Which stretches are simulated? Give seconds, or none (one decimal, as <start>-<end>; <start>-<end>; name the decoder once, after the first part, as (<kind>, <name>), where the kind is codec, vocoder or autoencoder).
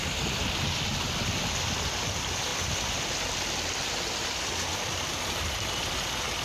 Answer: none